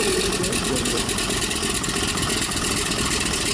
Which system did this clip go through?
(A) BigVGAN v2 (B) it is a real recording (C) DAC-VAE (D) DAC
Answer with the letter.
A